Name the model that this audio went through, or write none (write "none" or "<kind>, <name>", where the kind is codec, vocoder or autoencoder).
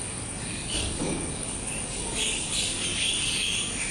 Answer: codec, DAC